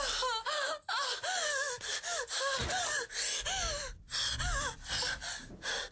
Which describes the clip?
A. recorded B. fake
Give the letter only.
A